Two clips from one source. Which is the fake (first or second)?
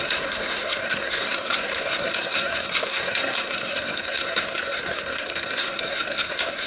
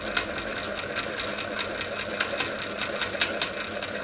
first